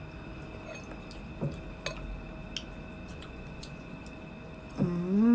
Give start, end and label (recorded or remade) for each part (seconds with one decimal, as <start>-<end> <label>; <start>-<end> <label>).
0.0-3.1 recorded; 3.1-4.0 remade; 4.0-5.3 recorded